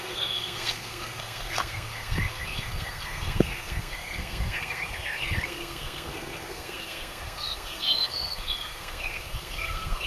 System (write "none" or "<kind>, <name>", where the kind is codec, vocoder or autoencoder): codec, SNAC